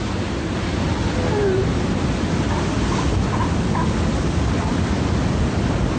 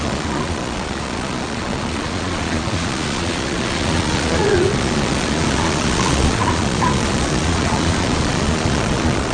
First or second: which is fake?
second